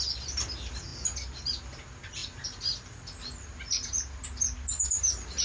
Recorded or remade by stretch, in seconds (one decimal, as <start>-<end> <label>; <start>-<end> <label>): 0.0-5.4 recorded